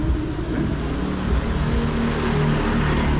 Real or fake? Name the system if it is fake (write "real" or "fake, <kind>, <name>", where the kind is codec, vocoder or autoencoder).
real